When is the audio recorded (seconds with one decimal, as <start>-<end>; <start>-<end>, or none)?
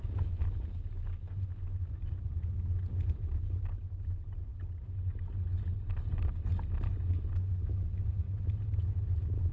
0.0-9.5